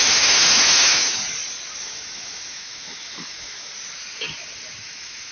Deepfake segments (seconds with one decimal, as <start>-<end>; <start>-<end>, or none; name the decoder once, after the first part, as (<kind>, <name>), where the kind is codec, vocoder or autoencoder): 0.0-1.2 (autoencoder, DAC-VAE); 1.8-3.7; 4.8-5.3